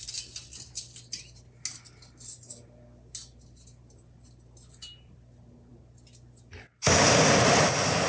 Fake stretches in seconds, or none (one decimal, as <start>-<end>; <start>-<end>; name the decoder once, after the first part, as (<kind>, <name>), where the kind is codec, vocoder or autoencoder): none

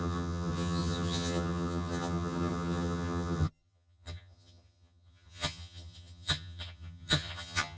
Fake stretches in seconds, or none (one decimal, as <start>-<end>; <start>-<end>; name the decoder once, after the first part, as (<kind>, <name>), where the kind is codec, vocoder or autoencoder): 0.0-7.8 (vocoder, HiFi-GAN)

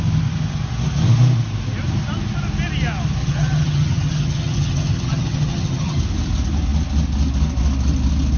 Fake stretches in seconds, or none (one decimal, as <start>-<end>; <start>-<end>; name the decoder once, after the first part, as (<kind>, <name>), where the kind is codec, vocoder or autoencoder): 3.2-6.0 (vocoder, HiFi-GAN)

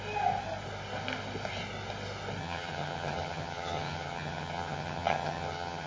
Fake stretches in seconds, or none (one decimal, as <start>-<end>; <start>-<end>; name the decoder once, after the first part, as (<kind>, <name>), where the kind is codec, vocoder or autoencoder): 2.4-5.9 (vocoder, HiFi-GAN)

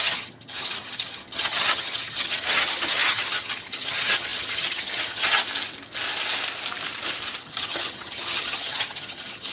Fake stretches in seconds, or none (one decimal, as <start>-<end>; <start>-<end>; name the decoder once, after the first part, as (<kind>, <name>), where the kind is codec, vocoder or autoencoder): 0.0-5.4 (vocoder, HiFi-GAN); 7.4-9.5